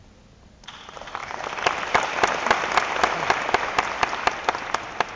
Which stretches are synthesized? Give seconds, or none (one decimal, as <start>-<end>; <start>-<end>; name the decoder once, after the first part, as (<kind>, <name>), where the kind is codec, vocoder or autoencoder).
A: none